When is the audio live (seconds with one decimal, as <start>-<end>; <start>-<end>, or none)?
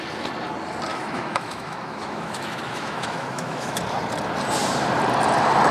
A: 0.0-0.9; 3.8-5.7